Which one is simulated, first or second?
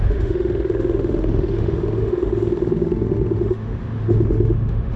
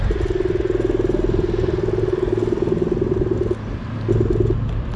first